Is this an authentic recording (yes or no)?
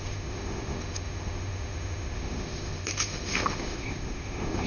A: no